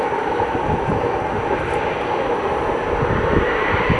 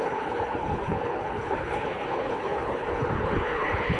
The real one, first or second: first